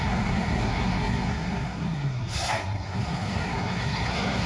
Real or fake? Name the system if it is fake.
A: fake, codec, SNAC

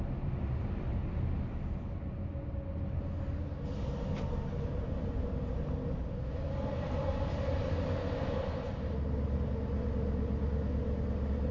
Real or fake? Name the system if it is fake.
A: real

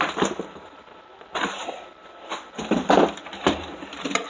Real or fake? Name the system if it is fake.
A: real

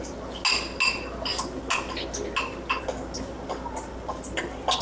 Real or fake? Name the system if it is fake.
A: real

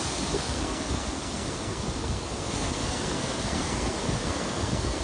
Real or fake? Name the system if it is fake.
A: fake, codec, SNAC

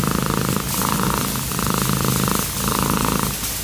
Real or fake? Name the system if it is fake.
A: real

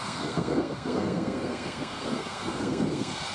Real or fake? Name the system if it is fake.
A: fake, codec, SNAC